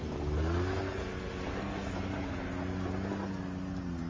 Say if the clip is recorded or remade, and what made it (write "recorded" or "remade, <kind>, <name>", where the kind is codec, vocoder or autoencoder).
recorded